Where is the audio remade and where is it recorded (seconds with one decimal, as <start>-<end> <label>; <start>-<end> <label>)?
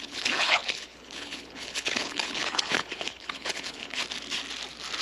0.0-4.0 remade; 4.0-5.0 recorded